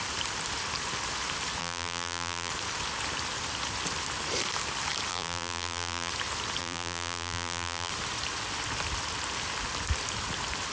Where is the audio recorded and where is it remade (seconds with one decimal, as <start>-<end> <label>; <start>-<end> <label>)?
0.0-1.6 recorded; 1.6-2.5 remade; 2.5-5.1 recorded; 5.1-6.1 remade; 6.1-6.6 recorded; 6.6-7.9 remade; 7.9-10.7 recorded